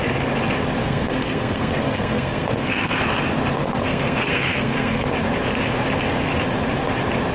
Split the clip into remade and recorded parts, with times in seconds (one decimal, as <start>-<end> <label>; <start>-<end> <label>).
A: 0.0-0.8 recorded; 0.8-3.0 remade; 3.0-3.6 recorded; 3.6-5.1 remade; 5.1-7.3 recorded